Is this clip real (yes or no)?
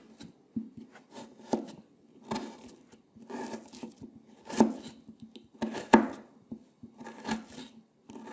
yes